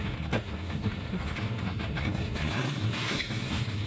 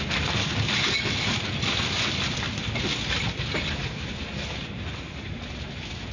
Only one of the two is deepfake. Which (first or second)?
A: first